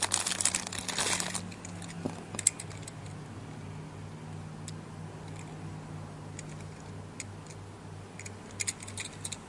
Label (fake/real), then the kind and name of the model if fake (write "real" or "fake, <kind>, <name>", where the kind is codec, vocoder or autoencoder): real